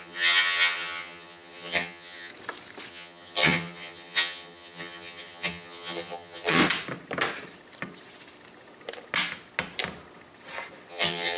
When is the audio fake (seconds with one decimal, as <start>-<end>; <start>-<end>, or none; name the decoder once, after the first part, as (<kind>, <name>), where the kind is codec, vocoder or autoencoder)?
0.0-2.3 (vocoder, HiFi-GAN); 2.9-6.6; 10.9-11.4

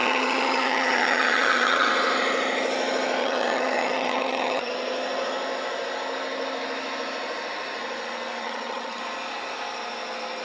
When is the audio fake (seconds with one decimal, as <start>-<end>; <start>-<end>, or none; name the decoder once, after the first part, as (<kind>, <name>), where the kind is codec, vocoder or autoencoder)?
0.0-1.9 (vocoder, HiFi-GAN); 3.2-4.7; 8.4-9.0

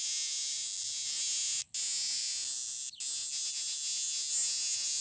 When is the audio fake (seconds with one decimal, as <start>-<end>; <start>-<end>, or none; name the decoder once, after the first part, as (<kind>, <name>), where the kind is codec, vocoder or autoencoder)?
none

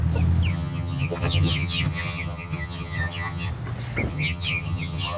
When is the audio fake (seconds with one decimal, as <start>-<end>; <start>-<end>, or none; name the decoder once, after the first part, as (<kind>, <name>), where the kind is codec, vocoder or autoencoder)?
0.5-3.5 (vocoder, HiFi-GAN); 4.1-5.2

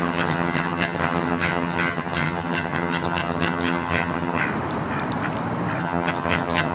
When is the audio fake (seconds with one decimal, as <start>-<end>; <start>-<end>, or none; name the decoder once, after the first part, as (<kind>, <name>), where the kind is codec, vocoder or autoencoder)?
0.0-4.4 (vocoder, HiFi-GAN); 5.8-6.7

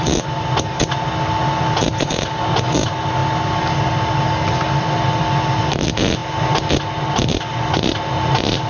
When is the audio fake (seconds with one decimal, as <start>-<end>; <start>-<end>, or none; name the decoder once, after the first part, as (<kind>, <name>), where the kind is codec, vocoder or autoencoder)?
none

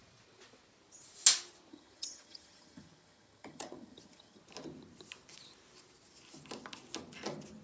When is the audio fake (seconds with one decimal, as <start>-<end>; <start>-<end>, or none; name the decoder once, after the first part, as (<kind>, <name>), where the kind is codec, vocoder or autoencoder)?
1.7-4.4 (vocoder, HiFi-GAN)

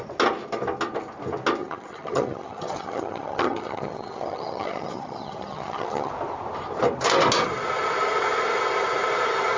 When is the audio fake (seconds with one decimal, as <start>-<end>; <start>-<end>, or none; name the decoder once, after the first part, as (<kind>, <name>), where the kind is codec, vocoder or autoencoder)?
1.6-6.1 (vocoder, HiFi-GAN)